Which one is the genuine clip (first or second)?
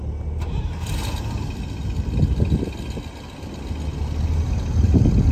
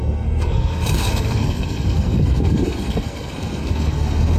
first